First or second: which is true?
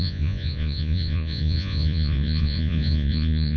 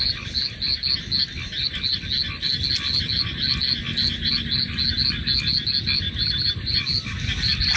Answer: second